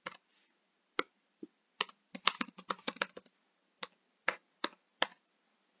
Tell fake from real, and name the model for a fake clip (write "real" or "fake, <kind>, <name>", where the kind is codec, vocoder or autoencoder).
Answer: real